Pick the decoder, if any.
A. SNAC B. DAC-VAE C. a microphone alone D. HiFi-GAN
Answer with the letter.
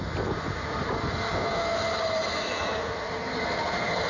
C